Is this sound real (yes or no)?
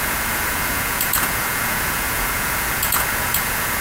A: no